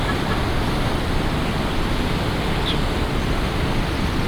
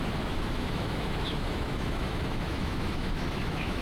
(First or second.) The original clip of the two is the first